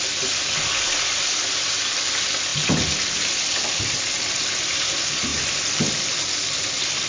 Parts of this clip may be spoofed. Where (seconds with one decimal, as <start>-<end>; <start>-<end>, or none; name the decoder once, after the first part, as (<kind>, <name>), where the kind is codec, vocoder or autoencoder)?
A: 0.0-7.1 (vocoder, BigVGAN v2)